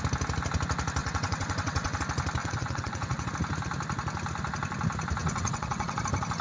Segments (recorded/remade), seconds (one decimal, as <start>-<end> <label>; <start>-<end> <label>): 0.0-1.0 recorded; 1.0-2.0 remade; 2.0-2.4 recorded; 2.4-3.3 remade; 3.3-5.2 recorded; 5.2-6.0 remade; 6.0-6.4 recorded